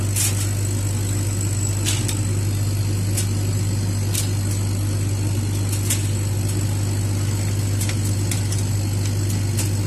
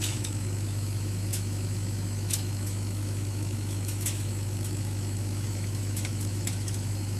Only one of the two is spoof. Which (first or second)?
second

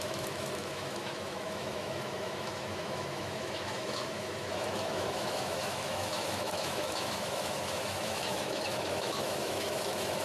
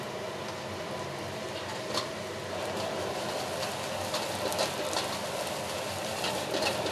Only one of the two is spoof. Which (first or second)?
first